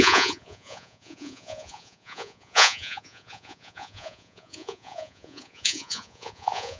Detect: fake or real fake